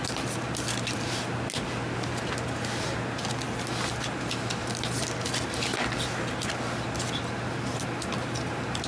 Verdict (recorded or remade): recorded